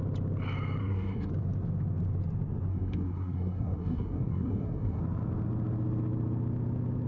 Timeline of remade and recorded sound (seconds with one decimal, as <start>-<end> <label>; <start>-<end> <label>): 0.0-0.8 recorded; 0.8-1.3 remade; 1.3-2.7 recorded; 2.7-5.0 remade; 5.0-7.1 recorded